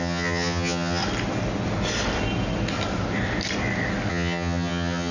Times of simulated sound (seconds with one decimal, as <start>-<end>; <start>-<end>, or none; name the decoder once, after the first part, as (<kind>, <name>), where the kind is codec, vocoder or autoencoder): 0.0-1.0 (vocoder, HiFi-GAN); 4.1-5.1